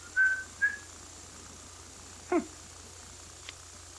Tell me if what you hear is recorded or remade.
recorded